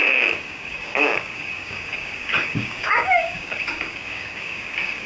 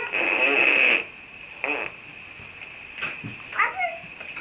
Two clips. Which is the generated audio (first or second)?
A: first